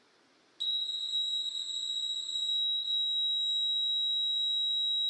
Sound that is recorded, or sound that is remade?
recorded